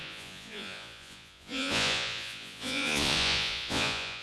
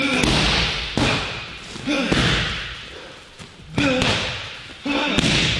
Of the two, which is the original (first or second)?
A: second